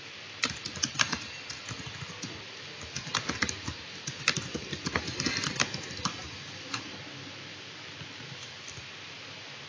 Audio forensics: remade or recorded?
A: recorded